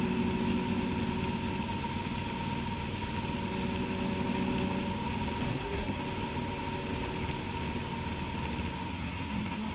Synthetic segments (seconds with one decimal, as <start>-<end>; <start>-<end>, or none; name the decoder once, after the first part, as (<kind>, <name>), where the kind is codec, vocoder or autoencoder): 5.5-6.0 (codec, SNAC); 8.9-9.7